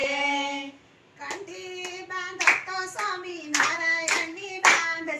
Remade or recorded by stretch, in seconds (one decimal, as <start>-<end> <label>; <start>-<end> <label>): 0.0-0.7 remade; 0.7-3.3 recorded; 3.3-5.2 remade